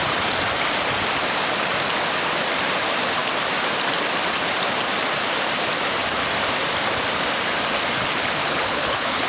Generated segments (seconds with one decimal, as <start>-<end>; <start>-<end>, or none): 8.4-9.3